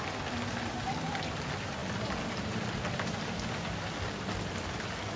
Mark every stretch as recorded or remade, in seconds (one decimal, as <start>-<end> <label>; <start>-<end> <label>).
0.0-5.2 recorded